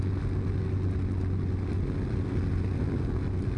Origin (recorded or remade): recorded